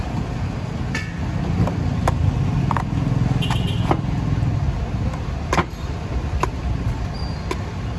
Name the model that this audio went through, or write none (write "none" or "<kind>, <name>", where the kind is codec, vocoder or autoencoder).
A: none